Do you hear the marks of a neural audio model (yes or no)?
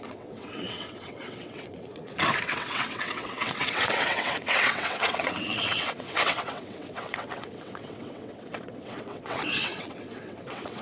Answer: yes